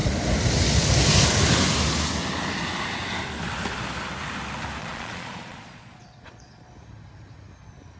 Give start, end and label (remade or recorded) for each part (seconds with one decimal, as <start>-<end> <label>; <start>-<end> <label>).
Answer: 0.0-4.8 recorded; 4.8-6.7 remade; 6.7-8.0 recorded